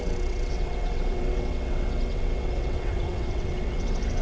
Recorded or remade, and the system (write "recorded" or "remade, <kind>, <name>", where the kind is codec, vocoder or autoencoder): remade, vocoder, WaveNeXt